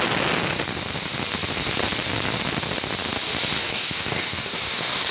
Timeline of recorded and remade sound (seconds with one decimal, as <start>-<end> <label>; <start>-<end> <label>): 0.0-3.6 recorded; 3.6-5.1 remade